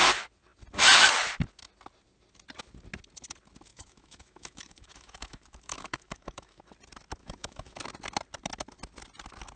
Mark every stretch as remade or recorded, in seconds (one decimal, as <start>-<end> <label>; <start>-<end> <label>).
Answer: 0.0-3.7 recorded; 3.7-6.6 remade; 6.6-7.2 recorded; 7.2-7.8 remade; 7.8-9.6 recorded